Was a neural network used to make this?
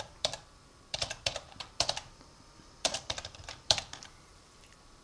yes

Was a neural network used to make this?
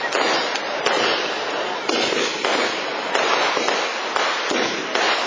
no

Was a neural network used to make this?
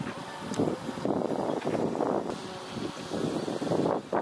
no